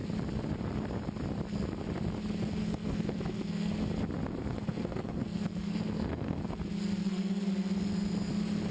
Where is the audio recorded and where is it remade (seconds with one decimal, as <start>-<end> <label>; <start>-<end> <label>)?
0.0-2.6 recorded; 2.6-3.7 remade; 3.7-4.4 recorded; 4.4-6.4 remade; 6.4-7.0 recorded; 7.0-7.5 remade; 7.5-8.7 recorded